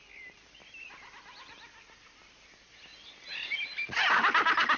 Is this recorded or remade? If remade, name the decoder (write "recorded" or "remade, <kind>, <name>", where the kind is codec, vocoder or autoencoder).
recorded